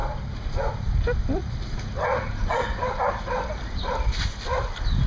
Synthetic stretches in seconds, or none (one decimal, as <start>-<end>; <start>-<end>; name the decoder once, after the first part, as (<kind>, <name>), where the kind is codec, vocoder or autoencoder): 0.0-0.7 (vocoder, BigVGAN v2); 1.4-3.9